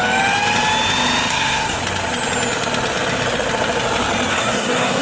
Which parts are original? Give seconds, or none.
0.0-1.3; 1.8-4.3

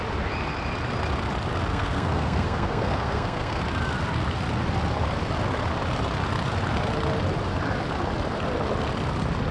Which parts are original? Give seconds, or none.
0.0-1.7; 3.6-9.5

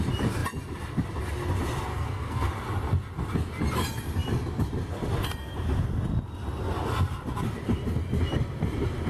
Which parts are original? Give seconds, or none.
0.0-1.9; 2.5-9.1